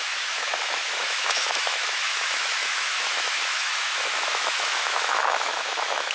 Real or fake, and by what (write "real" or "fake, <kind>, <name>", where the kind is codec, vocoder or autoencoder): fake, autoencoder, DAC-VAE